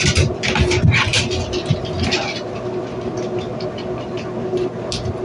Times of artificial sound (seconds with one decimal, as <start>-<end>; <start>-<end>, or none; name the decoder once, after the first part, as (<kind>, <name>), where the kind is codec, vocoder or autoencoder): none